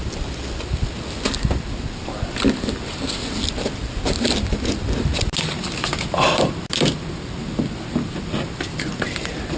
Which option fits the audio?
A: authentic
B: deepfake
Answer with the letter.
A